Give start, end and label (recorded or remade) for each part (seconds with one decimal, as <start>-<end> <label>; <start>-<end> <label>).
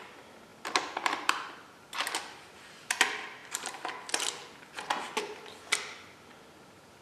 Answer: 0.0-7.0 recorded